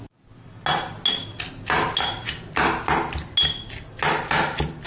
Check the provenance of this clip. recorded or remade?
recorded